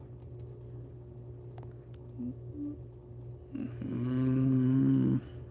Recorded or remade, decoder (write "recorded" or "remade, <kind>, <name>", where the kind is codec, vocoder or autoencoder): recorded